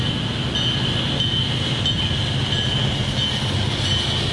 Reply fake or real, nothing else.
real